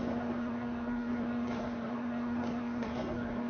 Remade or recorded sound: remade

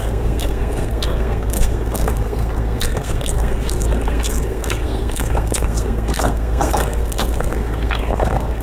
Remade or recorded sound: remade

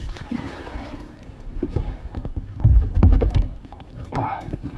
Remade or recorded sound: remade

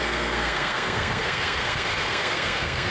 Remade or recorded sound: remade